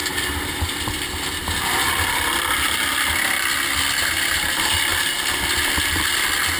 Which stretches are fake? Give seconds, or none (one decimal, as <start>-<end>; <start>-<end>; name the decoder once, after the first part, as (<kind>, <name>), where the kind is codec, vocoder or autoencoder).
0.0-3.3 (vocoder, BigVGAN v2)